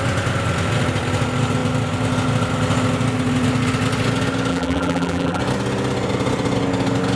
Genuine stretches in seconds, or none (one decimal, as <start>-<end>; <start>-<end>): 0.0-4.5; 5.4-7.2